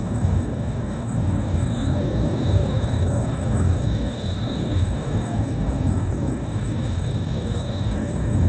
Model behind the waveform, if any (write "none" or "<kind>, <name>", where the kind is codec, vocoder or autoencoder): codec, DAC